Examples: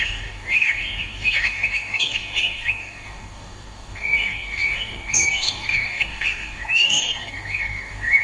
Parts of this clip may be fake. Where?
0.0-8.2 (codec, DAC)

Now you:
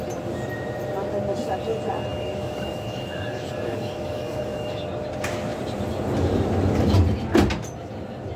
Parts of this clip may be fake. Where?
2.1-4.8 (codec, DAC)

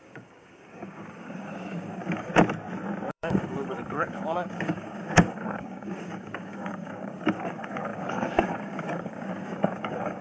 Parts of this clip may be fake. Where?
0.0-2.3 (codec, DAC); 3.1-10.2